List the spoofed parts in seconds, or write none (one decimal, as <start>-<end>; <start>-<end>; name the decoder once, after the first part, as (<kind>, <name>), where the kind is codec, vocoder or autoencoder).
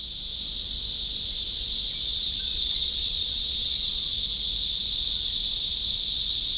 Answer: 2.1-4.0 (vocoder, WaveNeXt)